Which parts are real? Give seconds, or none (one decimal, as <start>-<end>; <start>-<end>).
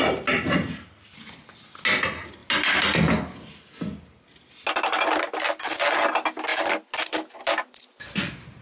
0.0-8.6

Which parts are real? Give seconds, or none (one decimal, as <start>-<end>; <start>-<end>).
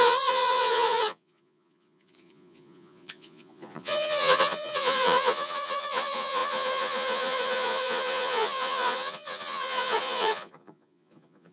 none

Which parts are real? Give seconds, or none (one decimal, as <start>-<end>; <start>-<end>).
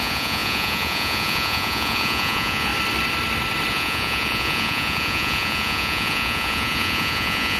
2.7-3.7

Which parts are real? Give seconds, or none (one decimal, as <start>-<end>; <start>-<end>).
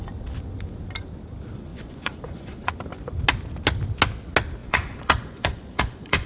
0.0-1.7; 2.8-4.6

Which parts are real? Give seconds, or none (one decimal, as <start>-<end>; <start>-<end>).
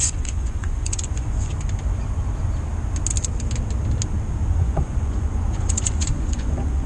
1.5-4.5